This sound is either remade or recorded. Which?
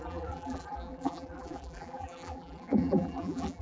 remade